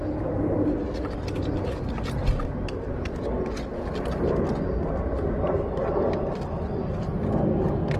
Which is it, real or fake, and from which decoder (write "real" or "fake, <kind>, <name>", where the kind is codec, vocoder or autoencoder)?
real